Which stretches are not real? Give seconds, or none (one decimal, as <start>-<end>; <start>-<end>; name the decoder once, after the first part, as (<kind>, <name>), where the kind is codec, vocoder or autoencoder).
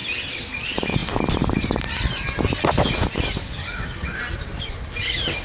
3.6-4.2 (codec, DAC)